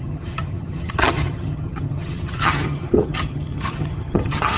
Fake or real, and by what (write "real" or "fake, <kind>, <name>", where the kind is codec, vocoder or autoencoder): fake, vocoder, HiFi-GAN